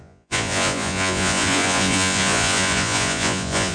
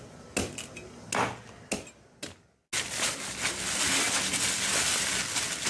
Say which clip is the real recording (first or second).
second